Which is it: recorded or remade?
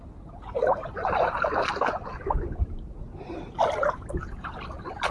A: recorded